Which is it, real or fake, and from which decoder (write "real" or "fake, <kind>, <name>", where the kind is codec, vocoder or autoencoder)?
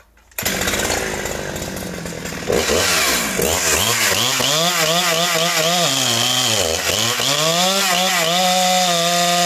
real